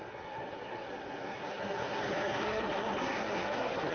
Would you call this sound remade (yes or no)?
yes